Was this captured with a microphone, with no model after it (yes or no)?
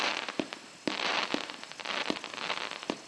no